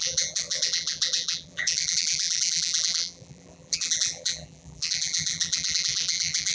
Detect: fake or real fake